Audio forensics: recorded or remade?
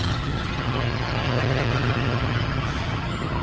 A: remade